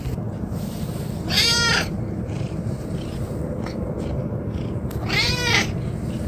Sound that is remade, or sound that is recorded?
remade